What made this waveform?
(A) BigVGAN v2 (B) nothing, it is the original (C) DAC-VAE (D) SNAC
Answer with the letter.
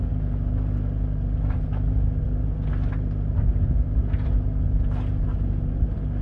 B